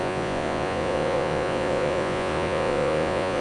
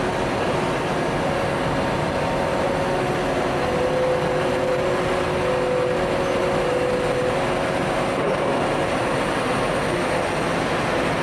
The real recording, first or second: second